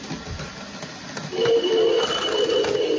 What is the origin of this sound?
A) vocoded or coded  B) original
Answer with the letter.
B